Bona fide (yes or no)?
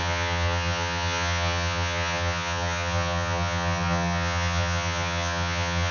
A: no